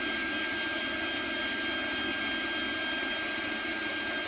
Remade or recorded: recorded